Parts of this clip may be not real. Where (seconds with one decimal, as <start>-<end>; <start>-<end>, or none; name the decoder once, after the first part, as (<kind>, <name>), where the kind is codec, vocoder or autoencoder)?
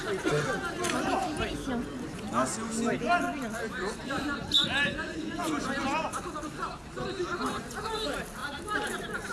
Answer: 8.4-9.3 (vocoder, BigVGAN v2)